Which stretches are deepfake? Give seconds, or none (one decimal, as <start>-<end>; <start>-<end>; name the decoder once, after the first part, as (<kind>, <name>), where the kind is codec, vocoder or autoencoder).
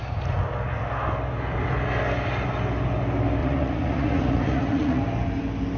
3.4-5.0 (vocoder, Vocos)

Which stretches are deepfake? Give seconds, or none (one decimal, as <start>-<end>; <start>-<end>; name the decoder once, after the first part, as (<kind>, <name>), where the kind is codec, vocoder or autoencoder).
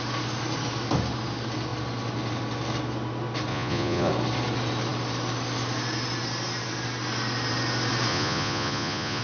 3.5-4.1 (vocoder, Vocos); 8.1-9.2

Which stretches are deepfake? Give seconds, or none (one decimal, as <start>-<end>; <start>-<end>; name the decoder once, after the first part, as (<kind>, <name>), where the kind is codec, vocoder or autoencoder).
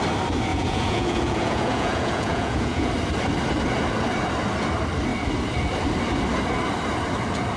0.5-2.9 (vocoder, Vocos)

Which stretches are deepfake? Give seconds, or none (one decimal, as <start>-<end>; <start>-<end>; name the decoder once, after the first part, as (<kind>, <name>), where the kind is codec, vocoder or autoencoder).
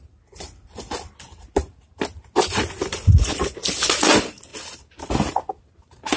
none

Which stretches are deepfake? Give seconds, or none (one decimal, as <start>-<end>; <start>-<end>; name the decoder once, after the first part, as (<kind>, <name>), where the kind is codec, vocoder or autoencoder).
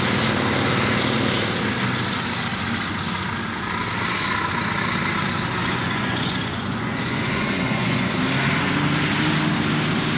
5.6-8.2 (vocoder, Vocos)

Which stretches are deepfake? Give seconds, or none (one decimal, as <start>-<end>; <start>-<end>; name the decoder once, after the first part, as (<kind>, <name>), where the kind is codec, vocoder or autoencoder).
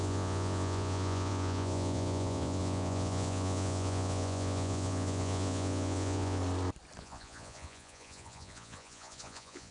0.0-6.4 (vocoder, Vocos); 7.0-9.7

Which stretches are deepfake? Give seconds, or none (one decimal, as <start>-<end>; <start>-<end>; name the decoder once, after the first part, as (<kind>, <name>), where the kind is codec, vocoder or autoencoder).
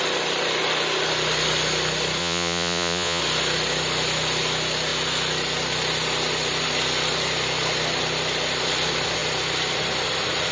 2.2-3.2 (vocoder, Vocos)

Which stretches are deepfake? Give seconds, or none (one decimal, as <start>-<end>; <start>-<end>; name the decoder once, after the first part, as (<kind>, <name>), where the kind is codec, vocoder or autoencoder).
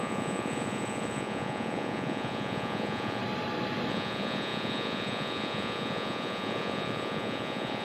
0.0-3.2 (vocoder, Vocos); 3.9-7.8